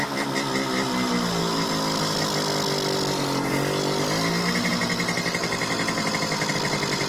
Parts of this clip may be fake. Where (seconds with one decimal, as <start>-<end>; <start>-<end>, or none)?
none